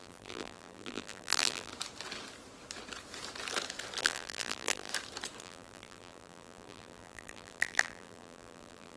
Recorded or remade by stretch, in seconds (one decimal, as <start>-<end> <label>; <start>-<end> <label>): 0.0-1.7 remade; 1.7-4.0 recorded; 4.0-4.9 remade; 4.9-5.4 recorded; 5.4-9.0 remade